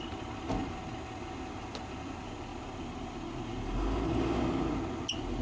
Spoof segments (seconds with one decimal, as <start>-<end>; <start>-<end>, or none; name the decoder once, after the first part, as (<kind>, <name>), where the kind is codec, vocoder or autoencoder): none